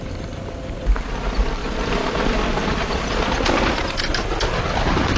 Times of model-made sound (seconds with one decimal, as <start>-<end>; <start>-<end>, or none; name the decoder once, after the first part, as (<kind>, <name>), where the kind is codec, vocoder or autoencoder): 1.6-3.1 (vocoder, BigVGAN v2)